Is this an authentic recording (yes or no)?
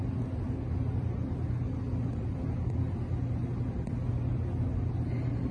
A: yes